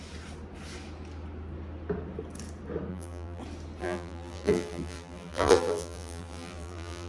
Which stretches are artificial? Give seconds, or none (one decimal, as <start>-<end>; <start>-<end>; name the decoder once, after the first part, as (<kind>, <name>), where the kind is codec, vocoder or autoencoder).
2.9-3.4 (vocoder, BigVGAN v2); 3.8-7.1